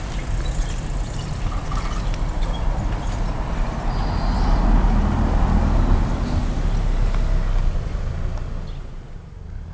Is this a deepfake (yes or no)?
no